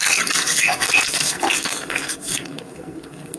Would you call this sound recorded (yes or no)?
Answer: no